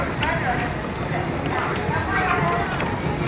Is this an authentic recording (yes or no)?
no